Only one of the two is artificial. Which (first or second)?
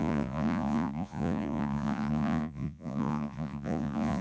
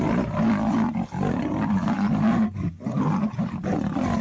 first